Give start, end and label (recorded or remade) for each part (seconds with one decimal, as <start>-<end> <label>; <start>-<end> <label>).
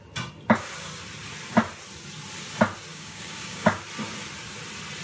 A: 0.0-2.9 recorded; 2.9-3.8 remade; 3.8-5.0 recorded